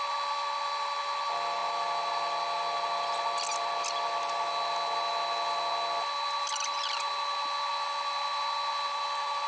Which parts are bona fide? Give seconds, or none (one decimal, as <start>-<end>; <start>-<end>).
0.0-9.5